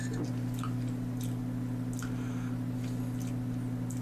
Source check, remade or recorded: recorded